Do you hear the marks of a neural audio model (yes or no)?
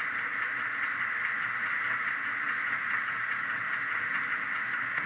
no